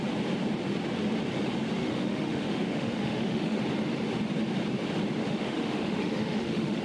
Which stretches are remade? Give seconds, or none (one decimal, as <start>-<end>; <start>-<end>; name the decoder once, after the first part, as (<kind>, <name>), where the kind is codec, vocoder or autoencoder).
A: 1.8-3.6 (autoencoder, DAC-VAE); 5.2-6.8